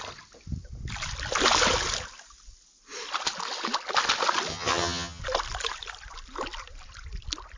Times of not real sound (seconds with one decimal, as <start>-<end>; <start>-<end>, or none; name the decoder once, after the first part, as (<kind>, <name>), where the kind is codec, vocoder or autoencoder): 4.5-5.2 (vocoder, HiFi-GAN)